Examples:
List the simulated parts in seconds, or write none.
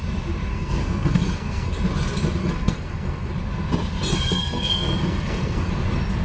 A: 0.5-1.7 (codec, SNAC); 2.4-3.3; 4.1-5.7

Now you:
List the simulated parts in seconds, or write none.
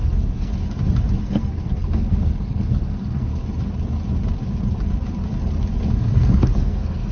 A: 0.0-0.5 (codec, SNAC); 1.2-3.3; 5.8-7.1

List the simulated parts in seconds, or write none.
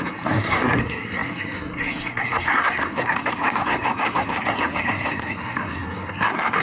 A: 0.0-6.6 (codec, SNAC)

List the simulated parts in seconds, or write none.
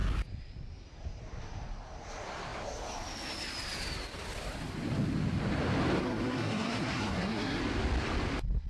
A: 6.0-7.6 (codec, SNAC)